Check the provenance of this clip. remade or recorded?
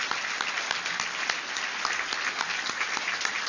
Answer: recorded